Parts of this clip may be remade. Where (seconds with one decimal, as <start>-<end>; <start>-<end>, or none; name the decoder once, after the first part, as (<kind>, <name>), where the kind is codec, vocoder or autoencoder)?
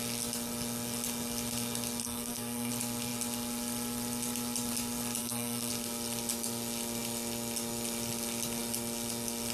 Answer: 2.0-2.7 (codec, SNAC); 5.2-5.7